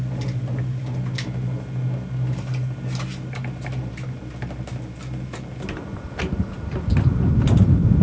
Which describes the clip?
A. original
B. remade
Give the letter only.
A